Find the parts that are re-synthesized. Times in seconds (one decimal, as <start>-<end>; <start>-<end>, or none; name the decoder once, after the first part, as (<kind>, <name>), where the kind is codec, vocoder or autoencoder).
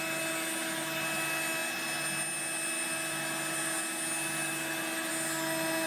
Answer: none